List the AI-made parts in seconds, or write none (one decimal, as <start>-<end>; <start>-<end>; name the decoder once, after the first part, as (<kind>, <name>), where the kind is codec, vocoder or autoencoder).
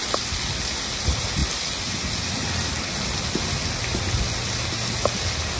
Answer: none